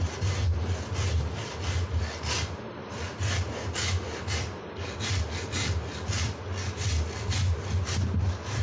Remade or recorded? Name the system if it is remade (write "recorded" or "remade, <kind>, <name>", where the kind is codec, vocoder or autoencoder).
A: recorded